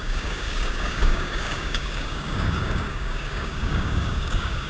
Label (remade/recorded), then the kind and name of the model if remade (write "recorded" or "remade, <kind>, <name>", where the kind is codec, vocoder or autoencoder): remade, codec, DAC